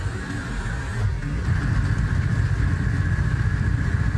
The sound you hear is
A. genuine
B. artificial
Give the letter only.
A